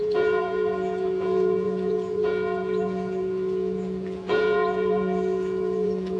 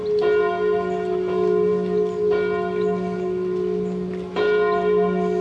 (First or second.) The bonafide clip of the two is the second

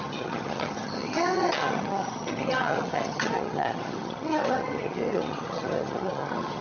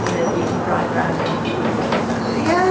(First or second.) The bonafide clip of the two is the second